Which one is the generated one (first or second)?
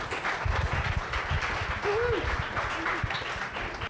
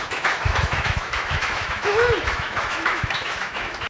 second